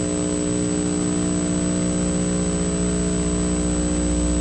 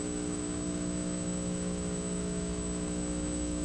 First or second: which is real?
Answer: first